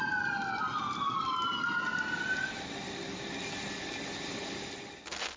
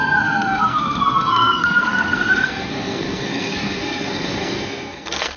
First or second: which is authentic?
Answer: first